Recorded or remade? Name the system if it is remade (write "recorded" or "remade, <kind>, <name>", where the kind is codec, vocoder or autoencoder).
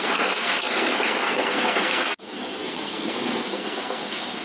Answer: remade, codec, SNAC